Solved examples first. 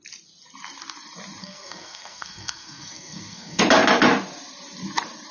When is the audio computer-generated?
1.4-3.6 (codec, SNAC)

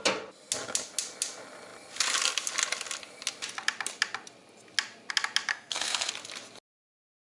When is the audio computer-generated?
5.5-6.1 (codec, SNAC)

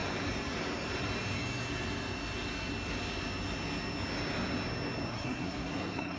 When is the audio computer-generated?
5.1-6.2 (codec, SNAC)

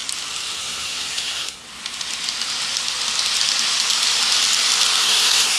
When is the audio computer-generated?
0.6-1.6 (codec, SNAC); 5.0-5.6

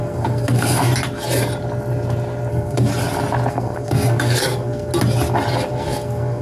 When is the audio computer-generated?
0.0-0.9 (codec, SNAC); 2.5-2.9; 3.5-4.9; 5.7-6.4

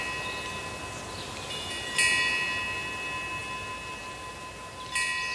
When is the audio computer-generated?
none

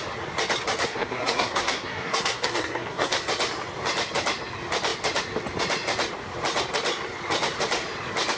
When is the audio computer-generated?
0.8-3.2 (codec, SNAC)